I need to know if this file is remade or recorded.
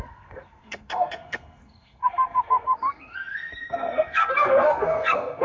remade